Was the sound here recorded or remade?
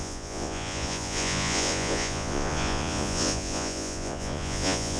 remade